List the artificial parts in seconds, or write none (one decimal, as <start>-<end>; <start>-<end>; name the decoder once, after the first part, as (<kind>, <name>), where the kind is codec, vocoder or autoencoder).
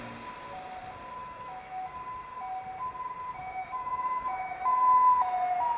1.2-1.9 (autoencoder, DAC-VAE); 3.4-5.8